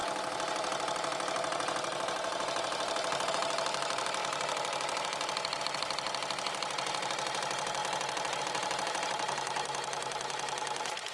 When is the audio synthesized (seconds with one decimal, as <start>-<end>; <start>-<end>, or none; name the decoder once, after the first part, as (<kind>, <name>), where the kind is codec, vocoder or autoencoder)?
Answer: 3.3-7.8 (vocoder, BigVGAN v2); 8.4-11.1